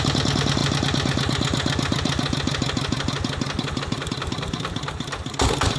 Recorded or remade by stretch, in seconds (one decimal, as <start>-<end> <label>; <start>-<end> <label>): 0.0-5.8 recorded